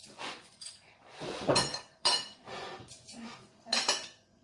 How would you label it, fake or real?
fake